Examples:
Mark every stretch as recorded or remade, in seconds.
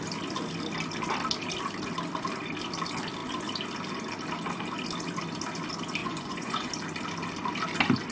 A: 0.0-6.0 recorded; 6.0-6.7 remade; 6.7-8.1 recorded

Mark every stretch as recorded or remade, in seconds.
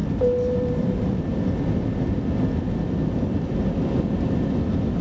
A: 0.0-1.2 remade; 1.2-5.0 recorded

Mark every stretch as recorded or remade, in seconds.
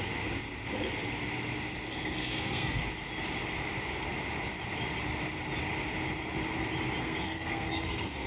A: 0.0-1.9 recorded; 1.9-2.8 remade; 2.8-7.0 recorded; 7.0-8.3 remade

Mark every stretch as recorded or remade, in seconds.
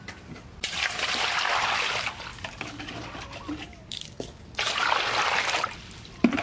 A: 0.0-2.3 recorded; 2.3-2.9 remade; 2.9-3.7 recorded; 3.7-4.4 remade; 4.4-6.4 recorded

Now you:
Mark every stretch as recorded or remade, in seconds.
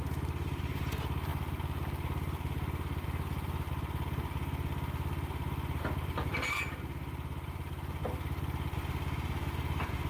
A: 0.0-1.3 remade; 1.3-5.8 recorded; 5.8-8.0 remade; 8.0-10.1 recorded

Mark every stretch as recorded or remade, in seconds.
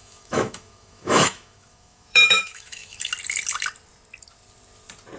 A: 0.0-3.1 remade; 3.1-5.2 recorded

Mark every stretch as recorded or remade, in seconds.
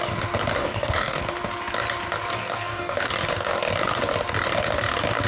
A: 0.0-0.6 recorded; 0.6-1.2 remade; 1.2-2.3 recorded; 2.3-3.1 remade; 3.1-5.3 recorded